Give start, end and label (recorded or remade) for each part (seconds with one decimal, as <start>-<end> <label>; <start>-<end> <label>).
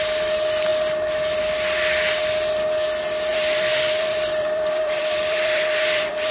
0.0-3.3 recorded; 3.3-6.3 remade